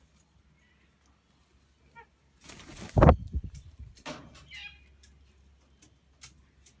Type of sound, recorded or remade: recorded